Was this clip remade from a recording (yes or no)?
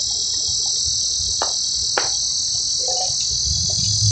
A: no